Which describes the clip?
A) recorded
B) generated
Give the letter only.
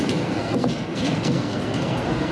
B